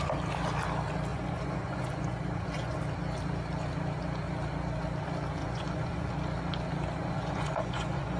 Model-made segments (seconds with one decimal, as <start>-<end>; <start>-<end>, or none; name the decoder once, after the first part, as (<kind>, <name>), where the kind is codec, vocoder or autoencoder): 1.1-2.8 (vocoder, Vocos); 5.4-6.1; 7.0-8.2